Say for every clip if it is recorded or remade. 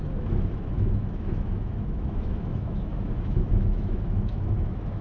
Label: remade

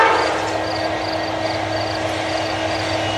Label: recorded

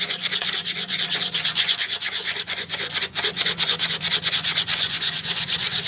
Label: remade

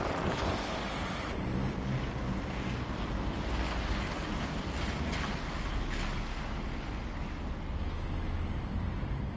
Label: recorded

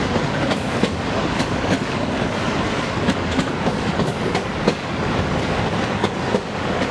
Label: remade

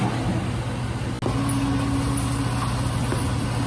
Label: recorded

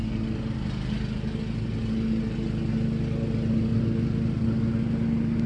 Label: recorded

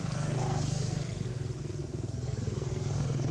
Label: remade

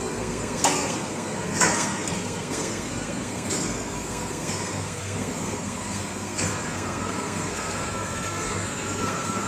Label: remade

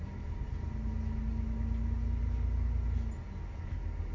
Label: recorded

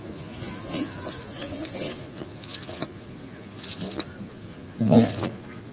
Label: remade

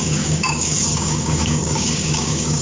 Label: remade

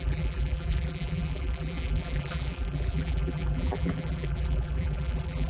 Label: remade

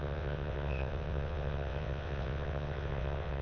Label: remade